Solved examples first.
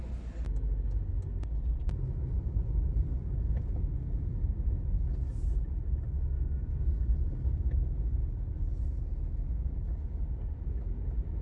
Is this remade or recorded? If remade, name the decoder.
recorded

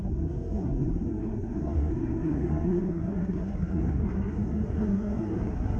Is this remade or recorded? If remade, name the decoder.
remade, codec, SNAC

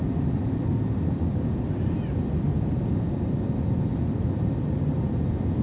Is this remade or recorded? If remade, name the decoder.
remade, vocoder, BigVGAN v2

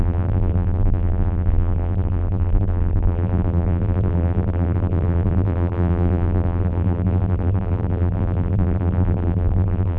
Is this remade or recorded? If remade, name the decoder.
remade, vocoder, BigVGAN v2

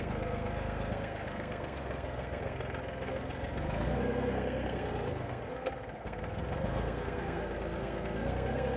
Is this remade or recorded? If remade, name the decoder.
remade, codec, SNAC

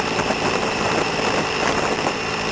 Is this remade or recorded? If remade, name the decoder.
remade, vocoder, BigVGAN v2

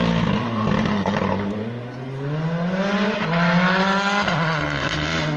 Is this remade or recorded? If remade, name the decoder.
recorded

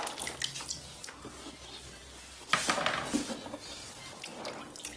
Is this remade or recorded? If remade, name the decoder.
recorded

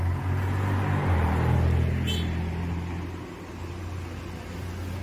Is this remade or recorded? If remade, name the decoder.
recorded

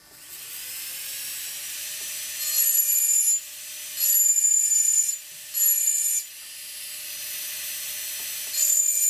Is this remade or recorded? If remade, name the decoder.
recorded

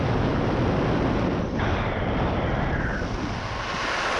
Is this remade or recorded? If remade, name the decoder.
recorded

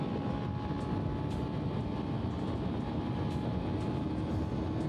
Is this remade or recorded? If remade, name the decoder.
recorded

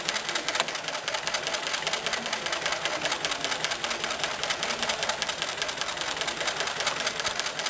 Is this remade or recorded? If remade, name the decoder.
recorded